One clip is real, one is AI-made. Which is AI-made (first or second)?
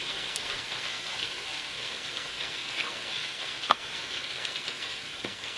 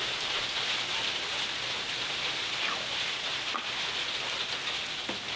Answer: first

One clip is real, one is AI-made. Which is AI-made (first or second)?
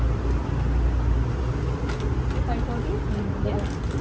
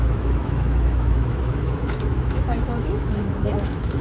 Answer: second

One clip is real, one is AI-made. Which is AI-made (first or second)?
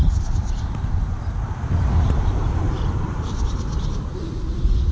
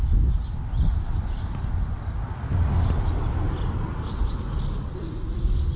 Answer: first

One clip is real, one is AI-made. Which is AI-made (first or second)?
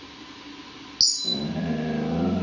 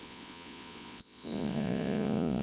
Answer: second